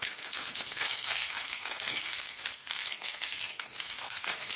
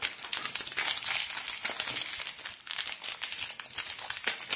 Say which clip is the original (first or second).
second